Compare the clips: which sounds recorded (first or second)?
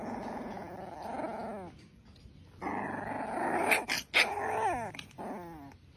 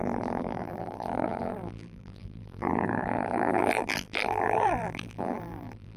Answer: first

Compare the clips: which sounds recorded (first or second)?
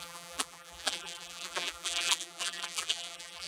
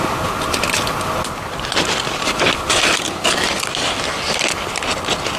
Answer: second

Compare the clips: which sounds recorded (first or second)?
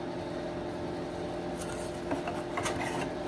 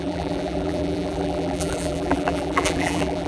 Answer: first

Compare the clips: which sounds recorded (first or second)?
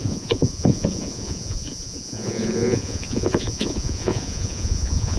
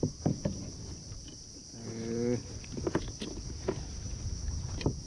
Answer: second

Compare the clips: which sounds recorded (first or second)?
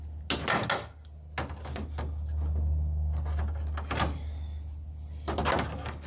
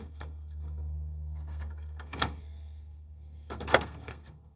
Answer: first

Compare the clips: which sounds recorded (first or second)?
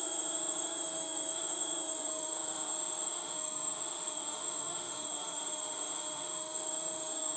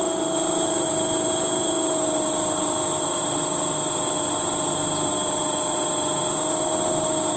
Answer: second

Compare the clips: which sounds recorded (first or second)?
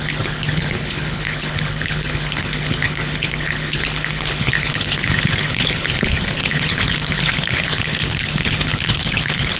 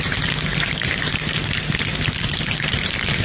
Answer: second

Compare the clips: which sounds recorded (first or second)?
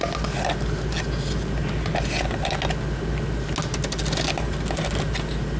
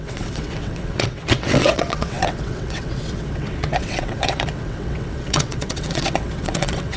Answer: first